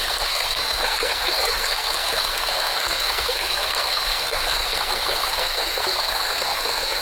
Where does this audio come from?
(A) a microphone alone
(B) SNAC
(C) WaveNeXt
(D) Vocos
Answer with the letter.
B